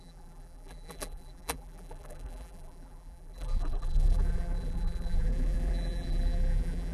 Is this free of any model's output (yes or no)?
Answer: no